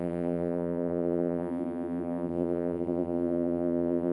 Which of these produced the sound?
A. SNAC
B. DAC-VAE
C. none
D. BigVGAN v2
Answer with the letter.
D